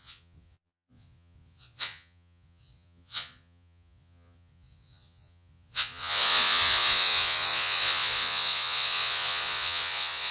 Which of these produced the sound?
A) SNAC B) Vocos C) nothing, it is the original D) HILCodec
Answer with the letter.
B